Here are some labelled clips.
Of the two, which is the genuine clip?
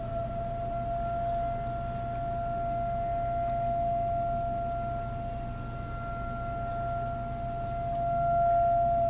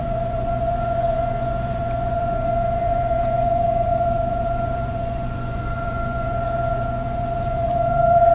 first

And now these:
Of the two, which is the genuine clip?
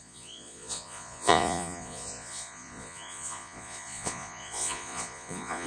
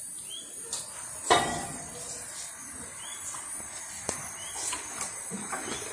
second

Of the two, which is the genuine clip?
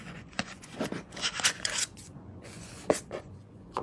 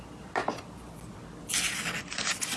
second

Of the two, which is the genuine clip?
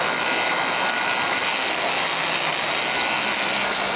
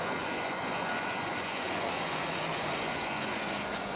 first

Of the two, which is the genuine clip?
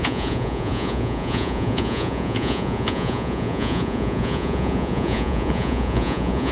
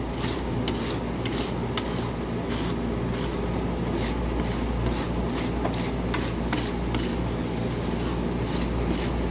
second